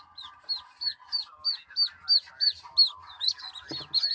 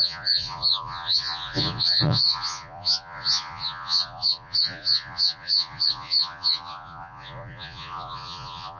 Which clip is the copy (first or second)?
second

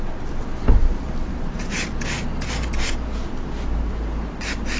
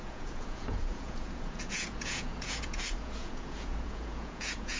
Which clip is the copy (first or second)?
second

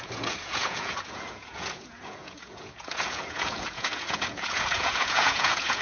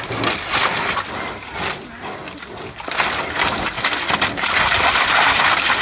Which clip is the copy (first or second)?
first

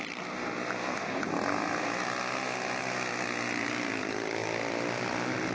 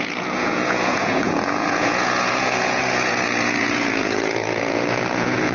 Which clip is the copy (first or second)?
second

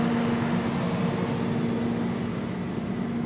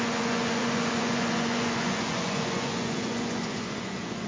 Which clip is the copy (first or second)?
second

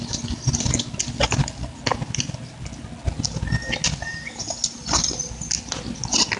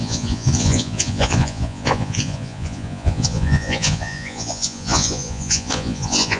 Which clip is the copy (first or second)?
second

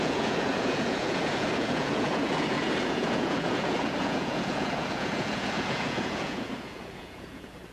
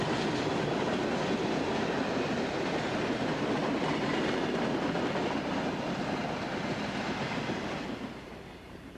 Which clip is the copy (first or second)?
first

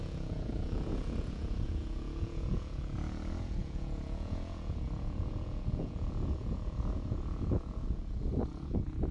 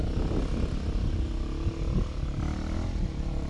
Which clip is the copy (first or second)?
first